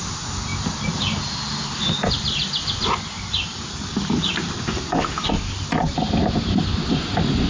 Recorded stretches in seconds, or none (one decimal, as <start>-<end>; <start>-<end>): 0.0-7.5